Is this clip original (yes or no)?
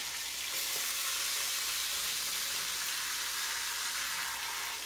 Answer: yes